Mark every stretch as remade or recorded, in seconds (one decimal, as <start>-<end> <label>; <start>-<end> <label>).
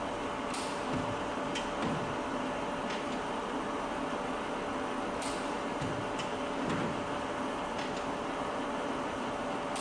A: 0.0-9.8 recorded